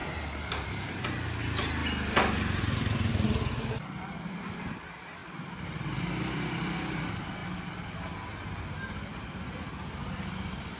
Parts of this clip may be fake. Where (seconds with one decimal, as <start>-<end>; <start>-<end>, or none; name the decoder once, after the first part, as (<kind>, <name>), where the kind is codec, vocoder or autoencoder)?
none